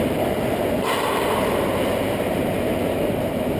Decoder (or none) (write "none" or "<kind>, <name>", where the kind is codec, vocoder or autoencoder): vocoder, BigVGAN v2